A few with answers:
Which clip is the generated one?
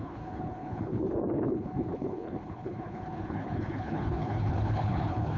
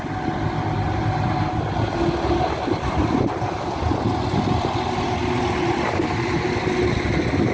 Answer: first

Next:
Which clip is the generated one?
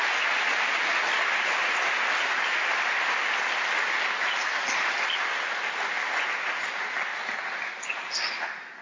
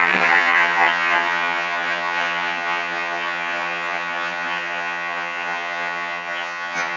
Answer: second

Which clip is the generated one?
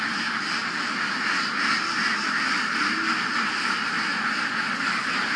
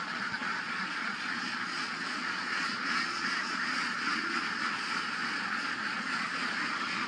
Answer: second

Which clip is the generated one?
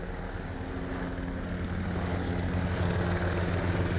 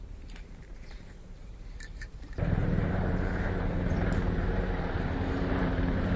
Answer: second